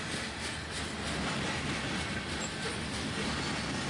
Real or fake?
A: real